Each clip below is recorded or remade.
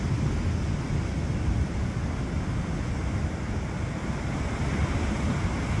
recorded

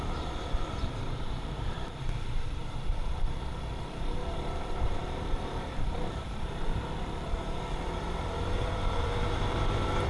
remade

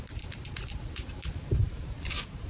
remade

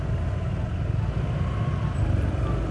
recorded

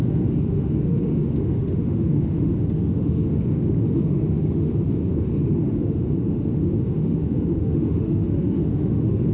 remade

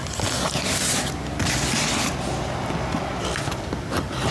recorded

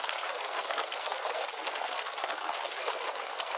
remade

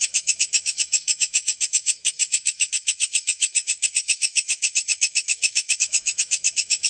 remade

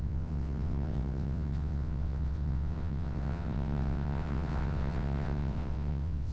remade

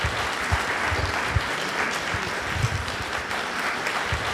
recorded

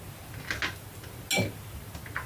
recorded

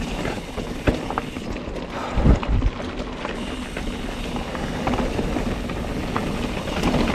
recorded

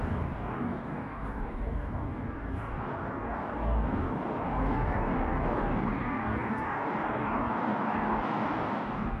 remade